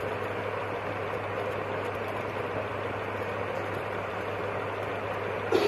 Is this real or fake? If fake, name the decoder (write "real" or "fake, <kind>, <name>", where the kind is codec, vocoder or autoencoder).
real